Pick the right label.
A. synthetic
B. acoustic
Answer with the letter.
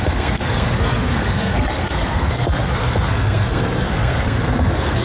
A